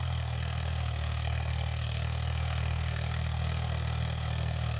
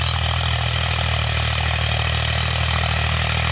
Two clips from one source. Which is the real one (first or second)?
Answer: second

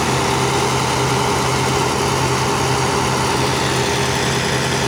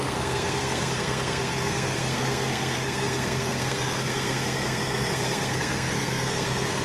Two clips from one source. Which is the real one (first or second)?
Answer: first